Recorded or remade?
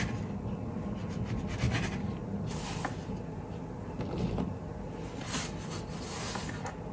recorded